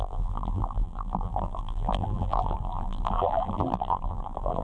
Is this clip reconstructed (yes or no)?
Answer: yes